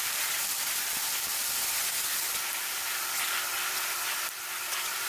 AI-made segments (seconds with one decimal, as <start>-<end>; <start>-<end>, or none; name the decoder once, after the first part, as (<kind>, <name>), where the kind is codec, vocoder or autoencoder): none

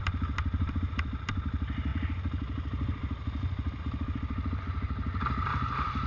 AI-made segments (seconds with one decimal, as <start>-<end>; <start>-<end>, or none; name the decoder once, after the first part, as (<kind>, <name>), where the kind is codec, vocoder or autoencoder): none

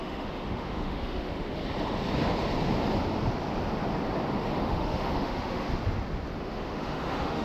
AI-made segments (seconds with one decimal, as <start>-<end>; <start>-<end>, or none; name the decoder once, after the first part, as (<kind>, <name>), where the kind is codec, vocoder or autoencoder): 0.0-1.6 (autoencoder, DAC-VAE); 4.6-5.7; 6.4-7.4

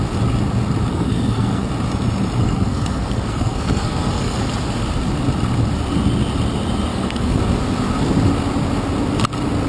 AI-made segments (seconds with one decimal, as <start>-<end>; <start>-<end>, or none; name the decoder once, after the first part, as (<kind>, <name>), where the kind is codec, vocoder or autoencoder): 0.9-1.7 (codec, SNAC); 2.4-4.5; 6.9-7.4

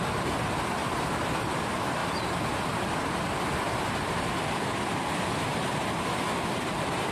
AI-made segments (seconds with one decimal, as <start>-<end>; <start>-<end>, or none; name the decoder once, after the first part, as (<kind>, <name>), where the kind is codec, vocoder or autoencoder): 0.8-1.4 (vocoder, BigVGAN v2)

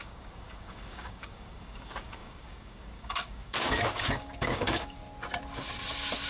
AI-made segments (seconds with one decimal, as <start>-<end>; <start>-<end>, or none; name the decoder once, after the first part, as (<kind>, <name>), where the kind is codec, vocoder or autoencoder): 0.0-5.0 (codec, DAC)

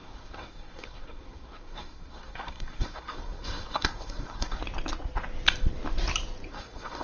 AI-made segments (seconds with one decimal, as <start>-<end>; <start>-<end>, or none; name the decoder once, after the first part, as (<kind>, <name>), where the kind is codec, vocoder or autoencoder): 0.0-4.6 (codec, SNAC); 6.5-7.0